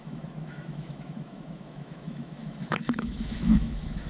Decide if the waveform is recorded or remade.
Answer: remade